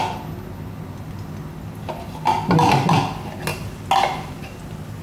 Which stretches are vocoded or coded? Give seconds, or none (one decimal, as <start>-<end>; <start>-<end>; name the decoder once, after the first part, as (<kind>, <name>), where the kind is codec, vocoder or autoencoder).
none